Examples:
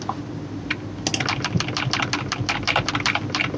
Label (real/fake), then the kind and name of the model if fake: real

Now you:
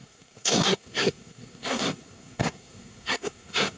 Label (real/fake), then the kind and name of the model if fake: fake, codec, SNAC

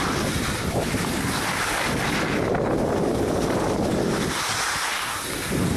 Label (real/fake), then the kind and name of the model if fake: real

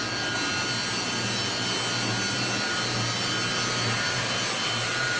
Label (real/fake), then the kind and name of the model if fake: real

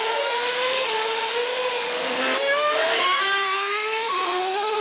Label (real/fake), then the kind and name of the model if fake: fake, autoencoder, DAC-VAE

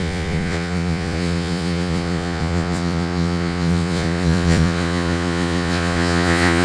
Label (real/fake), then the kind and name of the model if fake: fake, vocoder, Vocos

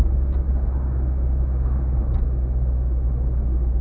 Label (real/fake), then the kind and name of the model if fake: real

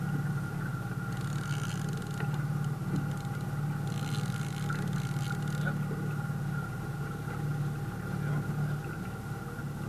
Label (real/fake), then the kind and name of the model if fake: real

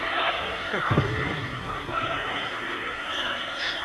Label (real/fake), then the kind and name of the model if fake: fake, codec, SNAC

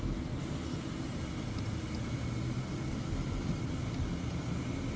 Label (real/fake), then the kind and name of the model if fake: real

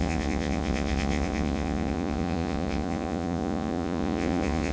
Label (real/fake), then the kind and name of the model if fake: fake, vocoder, Vocos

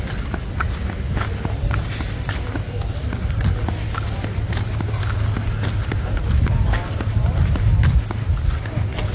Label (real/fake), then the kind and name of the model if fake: real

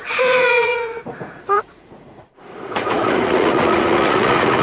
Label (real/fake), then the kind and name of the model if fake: fake, vocoder, Vocos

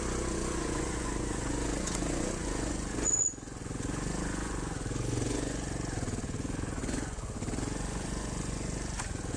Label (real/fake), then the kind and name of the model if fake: fake, vocoder, Vocos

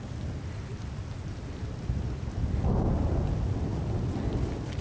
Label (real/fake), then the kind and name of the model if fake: real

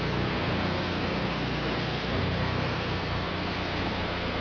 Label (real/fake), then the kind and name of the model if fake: fake, codec, SNAC